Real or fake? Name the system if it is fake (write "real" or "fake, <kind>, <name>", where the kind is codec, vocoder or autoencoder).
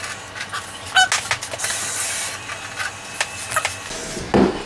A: real